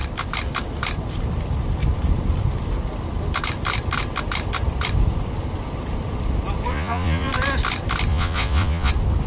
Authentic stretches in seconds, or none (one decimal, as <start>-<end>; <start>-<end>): 0.0-6.7; 7.3-8.1; 8.9-9.3